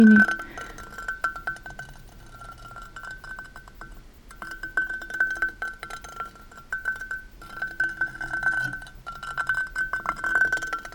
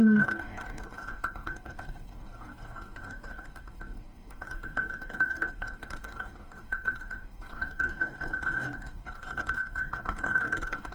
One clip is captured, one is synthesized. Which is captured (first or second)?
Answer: first